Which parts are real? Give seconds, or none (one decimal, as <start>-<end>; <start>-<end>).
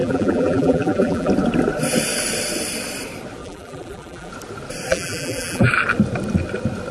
1.3-3.4; 4.3-4.9; 5.7-6.9